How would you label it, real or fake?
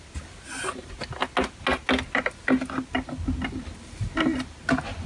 real